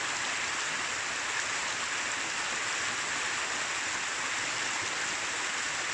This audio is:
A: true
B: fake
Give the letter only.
A